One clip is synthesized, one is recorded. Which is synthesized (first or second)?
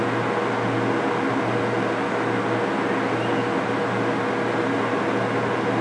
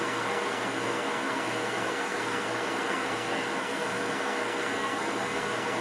second